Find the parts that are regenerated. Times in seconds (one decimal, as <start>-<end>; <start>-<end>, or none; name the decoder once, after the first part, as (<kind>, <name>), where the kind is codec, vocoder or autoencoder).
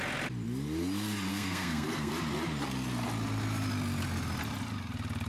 1.3-2.1 (codec, SNAC)